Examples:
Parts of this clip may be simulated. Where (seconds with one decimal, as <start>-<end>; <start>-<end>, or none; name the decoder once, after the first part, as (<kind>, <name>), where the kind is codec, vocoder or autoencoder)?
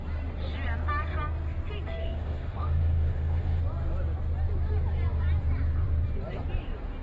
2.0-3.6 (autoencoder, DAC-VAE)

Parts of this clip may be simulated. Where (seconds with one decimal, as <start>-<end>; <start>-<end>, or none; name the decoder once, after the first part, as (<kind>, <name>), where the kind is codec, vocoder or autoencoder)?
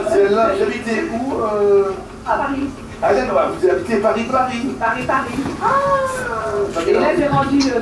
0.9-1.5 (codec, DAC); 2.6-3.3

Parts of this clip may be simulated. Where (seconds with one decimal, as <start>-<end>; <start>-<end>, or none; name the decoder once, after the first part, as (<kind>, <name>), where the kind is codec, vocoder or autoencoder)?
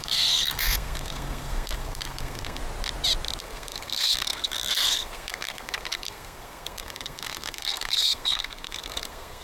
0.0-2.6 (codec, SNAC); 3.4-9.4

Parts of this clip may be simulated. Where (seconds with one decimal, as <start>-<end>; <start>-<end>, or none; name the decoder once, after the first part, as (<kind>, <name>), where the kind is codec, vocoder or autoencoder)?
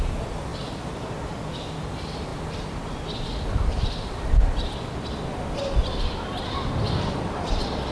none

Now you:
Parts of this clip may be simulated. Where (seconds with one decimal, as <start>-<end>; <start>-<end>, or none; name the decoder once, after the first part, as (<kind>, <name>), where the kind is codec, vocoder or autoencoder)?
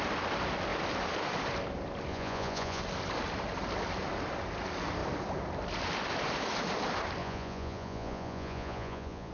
2.1-2.8 (vocoder, Vocos); 7.2-9.3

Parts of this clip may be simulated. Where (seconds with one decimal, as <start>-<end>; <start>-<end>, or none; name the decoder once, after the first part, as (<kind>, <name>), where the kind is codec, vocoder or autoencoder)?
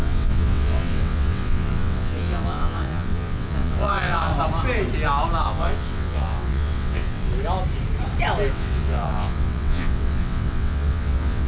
0.0-4.3 (vocoder, WaveNeXt); 5.4-7.3; 8.5-11.5